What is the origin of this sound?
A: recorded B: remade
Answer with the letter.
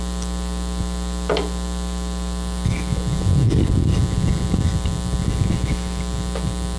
A